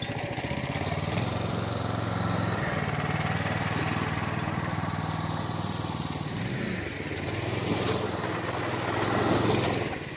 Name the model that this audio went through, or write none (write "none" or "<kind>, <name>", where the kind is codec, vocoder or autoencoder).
none